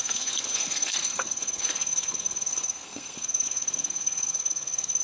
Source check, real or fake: fake